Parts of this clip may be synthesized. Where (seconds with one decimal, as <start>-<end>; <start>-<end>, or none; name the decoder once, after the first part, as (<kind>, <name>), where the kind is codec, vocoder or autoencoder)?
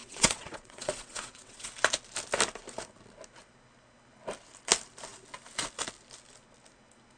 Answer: 0.0-1.7 (vocoder, WaveNeXt)